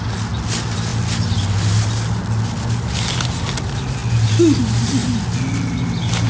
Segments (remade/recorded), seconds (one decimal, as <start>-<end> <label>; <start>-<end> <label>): 0.0-6.3 recorded